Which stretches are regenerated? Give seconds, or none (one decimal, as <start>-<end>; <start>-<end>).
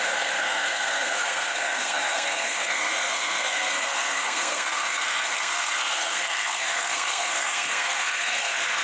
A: 0.0-8.8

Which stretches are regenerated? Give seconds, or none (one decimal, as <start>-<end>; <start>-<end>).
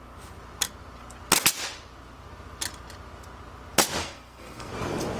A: 4.0-4.7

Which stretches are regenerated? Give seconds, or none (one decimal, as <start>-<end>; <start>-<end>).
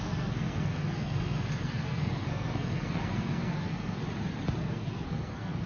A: 0.0-4.0; 4.6-5.7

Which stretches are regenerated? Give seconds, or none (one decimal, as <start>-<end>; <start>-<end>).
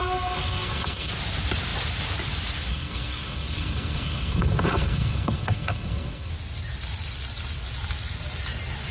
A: 0.0-1.1; 2.7-6.3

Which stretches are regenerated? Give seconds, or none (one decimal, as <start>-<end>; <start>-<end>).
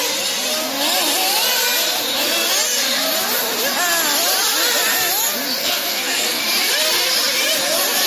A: 5.6-6.4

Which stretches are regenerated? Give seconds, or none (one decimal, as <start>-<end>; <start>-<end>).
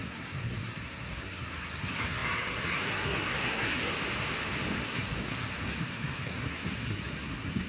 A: 0.0-3.9; 4.8-7.7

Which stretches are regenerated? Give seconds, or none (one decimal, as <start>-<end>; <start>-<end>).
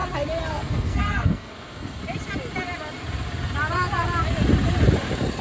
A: 0.5-2.0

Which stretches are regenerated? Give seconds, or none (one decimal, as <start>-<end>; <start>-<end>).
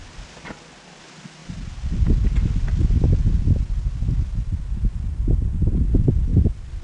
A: none